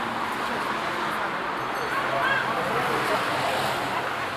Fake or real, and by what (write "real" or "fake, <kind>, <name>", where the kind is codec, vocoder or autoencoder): real